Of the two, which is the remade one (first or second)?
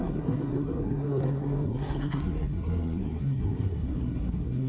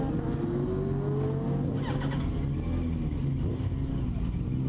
first